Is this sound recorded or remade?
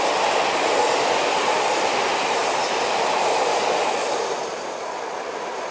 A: recorded